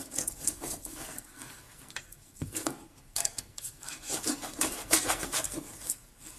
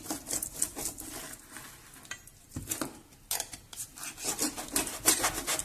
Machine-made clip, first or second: first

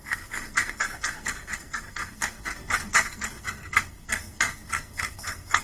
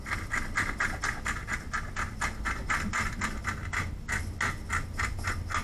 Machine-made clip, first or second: first